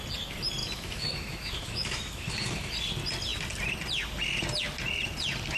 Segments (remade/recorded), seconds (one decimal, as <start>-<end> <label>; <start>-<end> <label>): 0.0-0.6 recorded; 0.6-2.7 remade; 2.7-5.6 recorded